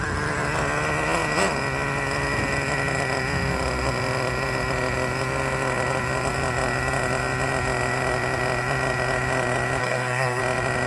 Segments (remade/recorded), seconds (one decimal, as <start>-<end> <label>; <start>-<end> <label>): 0.0-9.8 recorded; 9.8-10.4 remade; 10.4-10.9 recorded